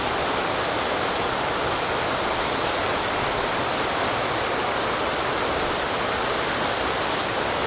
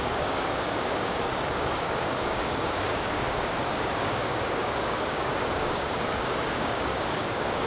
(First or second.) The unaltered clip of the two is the first